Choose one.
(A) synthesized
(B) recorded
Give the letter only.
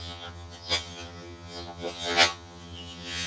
A